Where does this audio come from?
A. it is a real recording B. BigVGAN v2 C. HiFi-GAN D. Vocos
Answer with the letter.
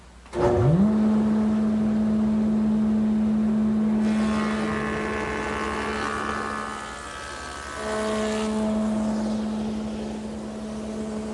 A